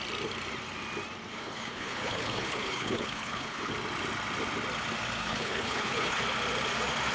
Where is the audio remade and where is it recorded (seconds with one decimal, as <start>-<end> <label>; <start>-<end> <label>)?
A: 0.0-1.3 recorded; 1.3-3.7 remade; 3.7-5.2 recorded; 5.2-6.2 remade; 6.2-7.1 recorded